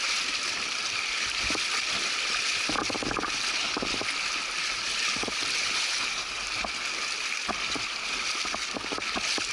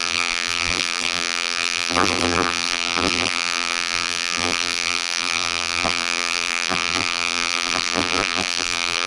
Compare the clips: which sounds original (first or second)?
first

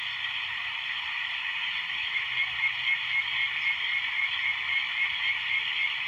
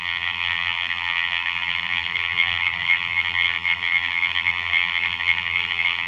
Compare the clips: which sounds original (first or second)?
first